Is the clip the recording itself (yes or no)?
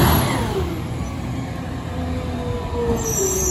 yes